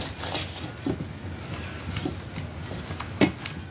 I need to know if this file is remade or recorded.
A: recorded